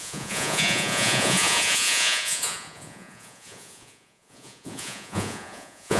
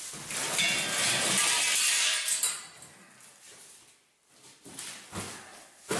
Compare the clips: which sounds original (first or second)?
second